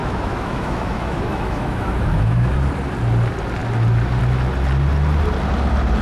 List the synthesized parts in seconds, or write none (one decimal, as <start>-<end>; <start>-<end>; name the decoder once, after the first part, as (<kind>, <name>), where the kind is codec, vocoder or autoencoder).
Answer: 0.0-2.5 (autoencoder, DAC-VAE)